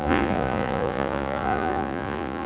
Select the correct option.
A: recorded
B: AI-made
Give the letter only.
B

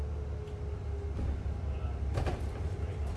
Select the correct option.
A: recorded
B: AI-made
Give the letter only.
A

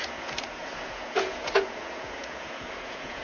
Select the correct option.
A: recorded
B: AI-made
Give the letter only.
B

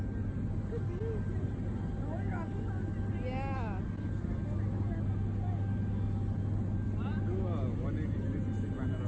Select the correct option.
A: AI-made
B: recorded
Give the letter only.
B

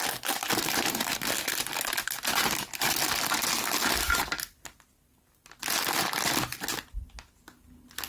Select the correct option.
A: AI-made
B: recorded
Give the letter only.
B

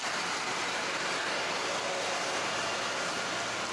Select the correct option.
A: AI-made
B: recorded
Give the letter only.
B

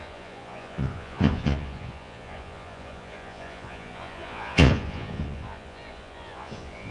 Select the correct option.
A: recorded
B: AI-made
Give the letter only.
B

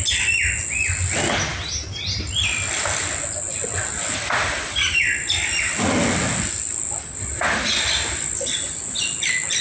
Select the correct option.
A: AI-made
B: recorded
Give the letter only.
B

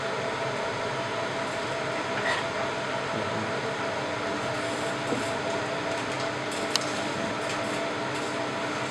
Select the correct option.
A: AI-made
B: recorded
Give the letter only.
B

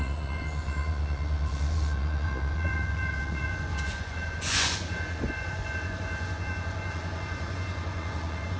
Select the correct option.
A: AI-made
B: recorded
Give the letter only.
A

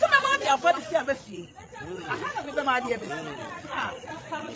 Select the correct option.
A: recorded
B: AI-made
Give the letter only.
B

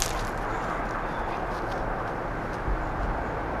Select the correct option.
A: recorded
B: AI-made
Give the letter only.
A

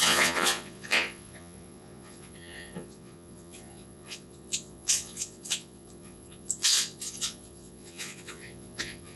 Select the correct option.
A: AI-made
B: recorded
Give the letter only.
A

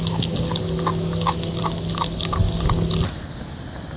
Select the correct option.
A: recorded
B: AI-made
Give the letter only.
A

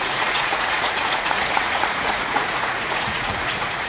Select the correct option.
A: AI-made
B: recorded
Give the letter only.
A